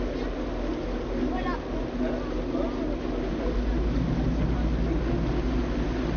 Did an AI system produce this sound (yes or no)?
no